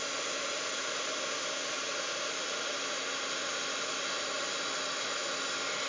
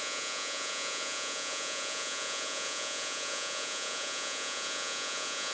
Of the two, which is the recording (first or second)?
first